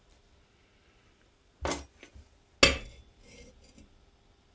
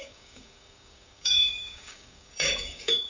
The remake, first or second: second